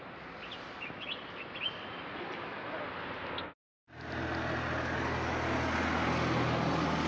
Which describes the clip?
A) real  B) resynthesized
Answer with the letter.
A